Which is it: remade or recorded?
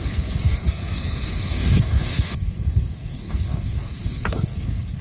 remade